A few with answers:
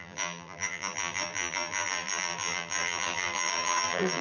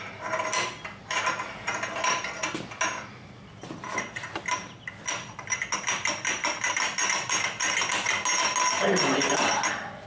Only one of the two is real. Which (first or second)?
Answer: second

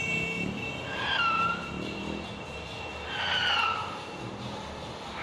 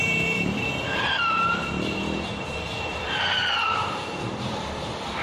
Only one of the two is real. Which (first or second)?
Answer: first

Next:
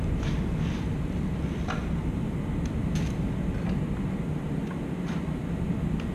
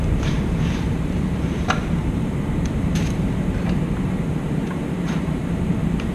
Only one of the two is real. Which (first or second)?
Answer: first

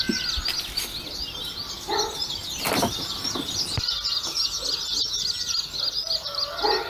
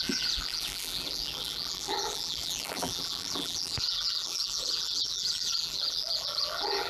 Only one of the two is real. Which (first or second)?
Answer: first